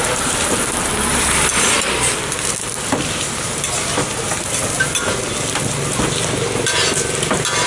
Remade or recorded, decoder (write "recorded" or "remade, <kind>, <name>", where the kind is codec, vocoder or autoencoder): recorded